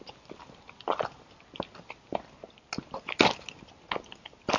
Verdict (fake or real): real